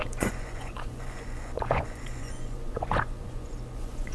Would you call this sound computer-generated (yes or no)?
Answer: yes